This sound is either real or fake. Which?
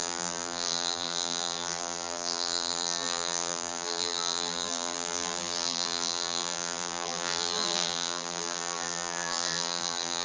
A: fake